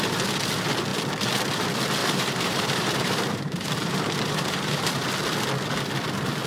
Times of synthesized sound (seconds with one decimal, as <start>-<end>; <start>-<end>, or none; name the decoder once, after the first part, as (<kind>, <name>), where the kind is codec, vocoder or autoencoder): 2.0-5.1 (vocoder, BigVGAN v2)